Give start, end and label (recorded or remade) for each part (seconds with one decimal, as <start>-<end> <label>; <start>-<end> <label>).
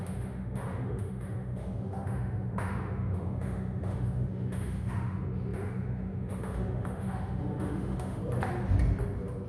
0.0-8.2 remade; 8.2-9.5 recorded